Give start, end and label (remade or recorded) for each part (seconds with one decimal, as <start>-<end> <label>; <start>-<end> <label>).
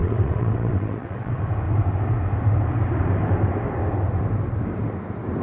0.0-1.3 remade; 1.3-5.4 recorded